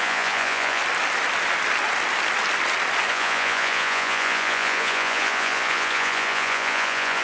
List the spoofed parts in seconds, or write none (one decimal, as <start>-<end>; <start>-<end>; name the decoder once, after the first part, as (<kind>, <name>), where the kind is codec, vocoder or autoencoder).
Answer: 0.0-0.8 (vocoder, Vocos); 3.1-7.2